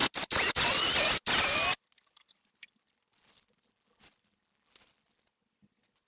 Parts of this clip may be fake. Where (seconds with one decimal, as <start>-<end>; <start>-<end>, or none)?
0.0-3.7